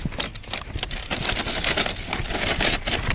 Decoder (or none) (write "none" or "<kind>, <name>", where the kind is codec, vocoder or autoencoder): none